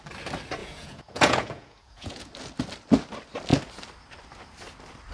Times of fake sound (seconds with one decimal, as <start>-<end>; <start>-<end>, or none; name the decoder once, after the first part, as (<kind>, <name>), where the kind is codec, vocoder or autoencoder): 0.6-2.3 (vocoder, Vocos)